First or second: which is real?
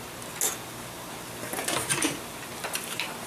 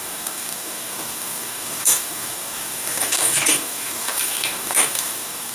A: first